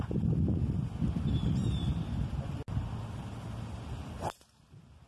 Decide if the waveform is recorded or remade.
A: recorded